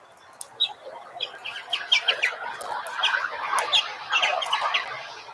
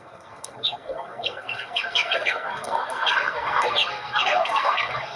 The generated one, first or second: second